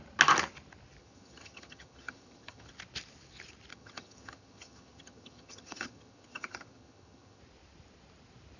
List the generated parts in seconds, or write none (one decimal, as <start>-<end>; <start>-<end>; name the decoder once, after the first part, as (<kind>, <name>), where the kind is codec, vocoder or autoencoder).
1.0-2.7 (vocoder, HiFi-GAN); 3.7-7.4